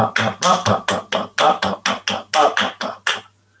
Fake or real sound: real